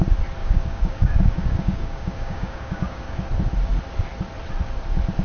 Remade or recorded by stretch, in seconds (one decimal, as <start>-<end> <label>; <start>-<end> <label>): 0.0-0.4 recorded; 0.4-3.3 remade; 3.3-5.2 recorded